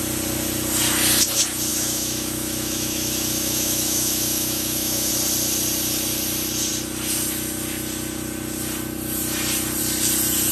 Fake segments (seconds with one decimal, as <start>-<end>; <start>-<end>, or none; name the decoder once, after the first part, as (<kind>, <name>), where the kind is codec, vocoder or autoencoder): 1.7-5.1 (autoencoder, DAC-VAE)